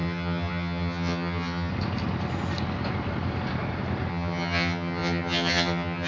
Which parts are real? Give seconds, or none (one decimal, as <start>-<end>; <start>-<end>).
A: 1.7-4.1